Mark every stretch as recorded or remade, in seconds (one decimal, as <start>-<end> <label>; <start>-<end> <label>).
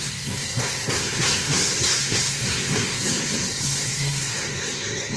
0.0-5.2 remade